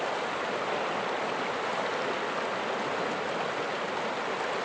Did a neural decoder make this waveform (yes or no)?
no